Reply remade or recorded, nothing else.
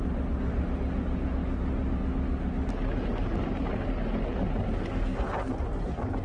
recorded